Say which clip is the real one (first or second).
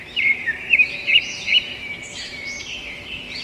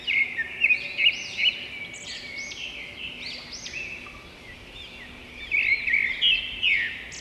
second